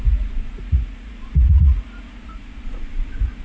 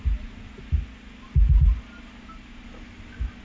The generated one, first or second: first